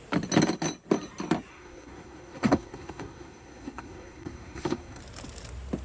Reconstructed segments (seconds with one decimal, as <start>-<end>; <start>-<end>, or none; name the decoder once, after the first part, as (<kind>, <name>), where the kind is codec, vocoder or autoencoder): 1.5-5.0 (codec, SNAC)